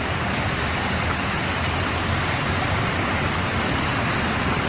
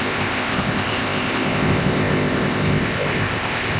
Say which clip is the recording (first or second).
first